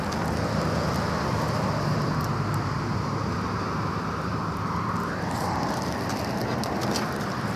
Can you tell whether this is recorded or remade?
recorded